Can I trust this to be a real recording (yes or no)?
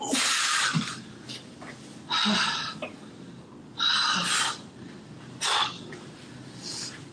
no